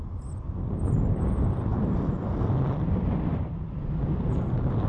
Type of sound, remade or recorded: recorded